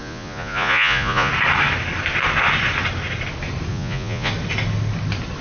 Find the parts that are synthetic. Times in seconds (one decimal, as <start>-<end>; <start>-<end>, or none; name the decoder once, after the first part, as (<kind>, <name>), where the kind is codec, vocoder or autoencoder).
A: 0.0-1.3 (vocoder, Vocos); 3.7-4.3